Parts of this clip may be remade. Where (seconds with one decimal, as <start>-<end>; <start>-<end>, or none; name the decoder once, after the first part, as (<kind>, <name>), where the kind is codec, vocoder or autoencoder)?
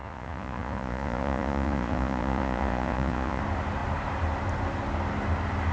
0.0-3.4 (vocoder, Vocos)